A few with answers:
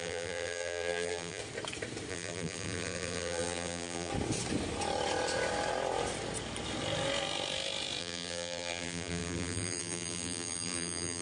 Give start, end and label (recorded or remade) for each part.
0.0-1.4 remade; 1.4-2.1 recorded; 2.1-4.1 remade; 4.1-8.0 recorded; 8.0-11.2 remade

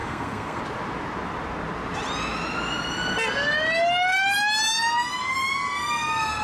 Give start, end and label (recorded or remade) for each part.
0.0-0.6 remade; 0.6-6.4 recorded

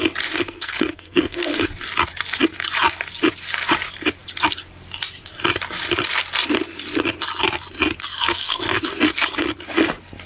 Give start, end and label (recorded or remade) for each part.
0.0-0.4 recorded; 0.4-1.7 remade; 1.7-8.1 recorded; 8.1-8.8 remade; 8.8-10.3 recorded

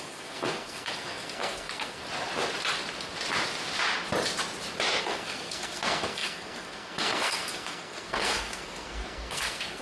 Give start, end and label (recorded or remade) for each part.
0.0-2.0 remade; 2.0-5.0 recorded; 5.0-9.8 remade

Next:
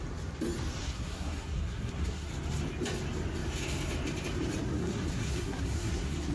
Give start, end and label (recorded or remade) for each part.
0.0-0.8 recorded; 0.8-2.3 remade; 2.3-4.8 recorded; 4.8-6.3 remade

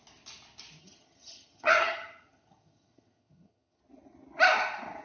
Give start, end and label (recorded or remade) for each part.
0.0-0.8 recorded; 0.8-3.8 remade; 3.8-5.0 recorded

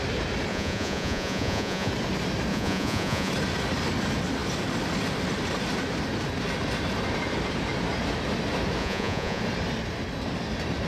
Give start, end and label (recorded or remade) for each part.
0.0-0.5 recorded; 0.5-1.9 remade; 1.9-2.5 recorded; 2.5-3.3 remade; 3.3-8.8 recorded; 8.8-9.4 remade; 9.4-10.9 recorded

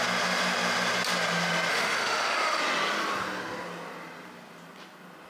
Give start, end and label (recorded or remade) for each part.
0.0-1.7 recorded; 1.7-2.6 remade; 2.6-5.3 recorded